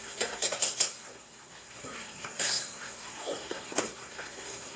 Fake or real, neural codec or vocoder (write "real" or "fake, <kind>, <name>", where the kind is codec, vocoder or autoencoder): fake, codec, SNAC